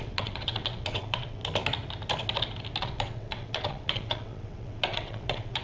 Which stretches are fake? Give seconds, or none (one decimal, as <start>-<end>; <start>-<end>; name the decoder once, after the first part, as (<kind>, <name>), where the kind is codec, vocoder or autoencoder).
0.0-1.4 (vocoder, WaveNeXt); 2.8-5.6